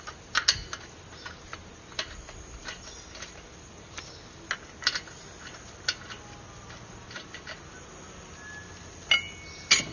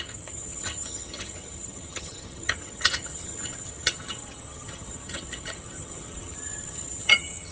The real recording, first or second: first